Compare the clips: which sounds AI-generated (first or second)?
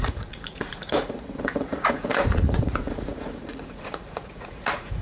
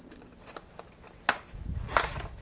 first